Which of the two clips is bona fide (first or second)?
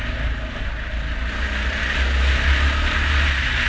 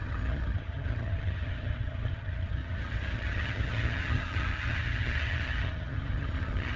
first